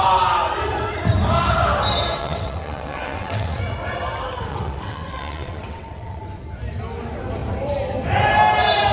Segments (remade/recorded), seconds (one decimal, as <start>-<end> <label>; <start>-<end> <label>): 0.0-2.2 recorded; 2.2-3.6 remade; 3.6-4.5 recorded; 4.5-6.2 remade; 6.2-8.9 recorded